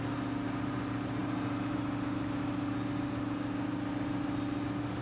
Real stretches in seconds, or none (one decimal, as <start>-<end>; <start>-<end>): 0.0-5.0